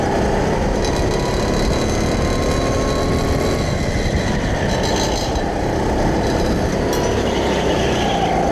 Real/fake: real